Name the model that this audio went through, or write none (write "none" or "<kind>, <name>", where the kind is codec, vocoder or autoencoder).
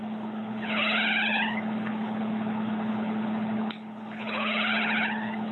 codec, HILCodec